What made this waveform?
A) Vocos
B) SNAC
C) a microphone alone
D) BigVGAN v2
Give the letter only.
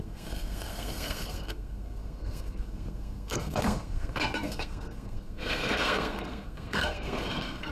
B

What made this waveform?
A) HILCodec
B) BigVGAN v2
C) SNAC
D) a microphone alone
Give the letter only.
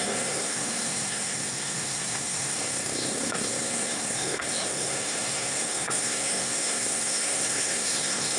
C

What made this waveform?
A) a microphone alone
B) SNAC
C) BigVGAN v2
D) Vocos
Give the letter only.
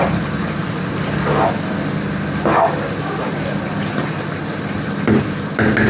A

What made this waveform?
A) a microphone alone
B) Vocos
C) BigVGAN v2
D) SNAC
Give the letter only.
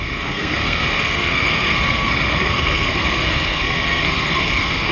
D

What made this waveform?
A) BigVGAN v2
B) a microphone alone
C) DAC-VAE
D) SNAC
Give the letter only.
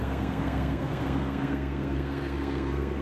D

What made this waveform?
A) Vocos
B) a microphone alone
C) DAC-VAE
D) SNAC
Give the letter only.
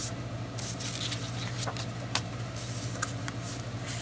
B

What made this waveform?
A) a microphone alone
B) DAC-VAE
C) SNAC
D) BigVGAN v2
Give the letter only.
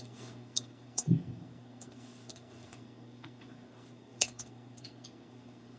C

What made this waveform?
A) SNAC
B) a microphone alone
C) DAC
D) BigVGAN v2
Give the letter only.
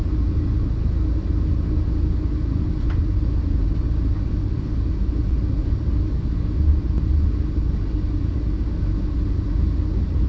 B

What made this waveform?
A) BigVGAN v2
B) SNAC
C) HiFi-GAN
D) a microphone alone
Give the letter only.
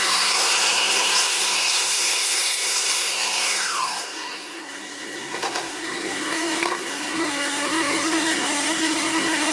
B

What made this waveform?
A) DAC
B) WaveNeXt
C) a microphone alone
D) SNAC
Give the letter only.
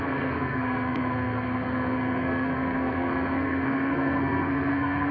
D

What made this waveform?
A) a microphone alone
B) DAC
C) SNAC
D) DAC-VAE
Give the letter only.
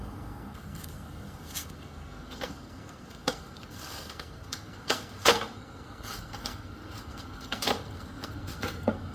C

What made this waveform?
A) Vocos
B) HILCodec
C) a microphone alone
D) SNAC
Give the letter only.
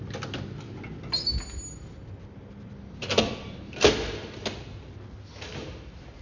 C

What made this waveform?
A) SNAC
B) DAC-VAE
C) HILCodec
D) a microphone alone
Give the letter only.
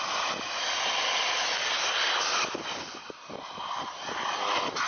D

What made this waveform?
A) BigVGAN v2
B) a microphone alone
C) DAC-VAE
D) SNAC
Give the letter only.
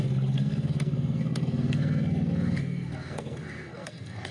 D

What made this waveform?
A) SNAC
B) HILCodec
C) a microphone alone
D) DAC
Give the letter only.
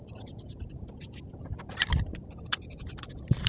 C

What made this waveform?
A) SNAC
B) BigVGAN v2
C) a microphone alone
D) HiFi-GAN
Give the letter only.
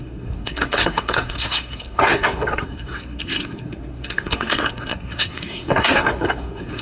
A